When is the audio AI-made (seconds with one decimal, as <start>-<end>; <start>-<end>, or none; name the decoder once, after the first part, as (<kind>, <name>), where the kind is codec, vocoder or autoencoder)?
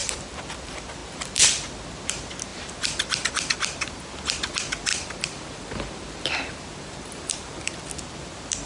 0.0-0.5 (vocoder, BigVGAN v2); 2.5-3.9; 4.9-7.9